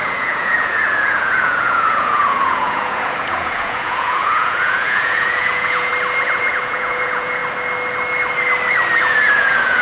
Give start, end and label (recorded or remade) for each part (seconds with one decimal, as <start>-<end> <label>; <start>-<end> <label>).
0.0-5.9 remade; 5.9-6.4 recorded; 6.4-7.4 remade; 7.4-9.0 recorded; 9.0-9.8 remade